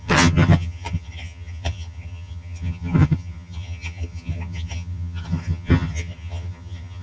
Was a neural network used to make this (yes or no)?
yes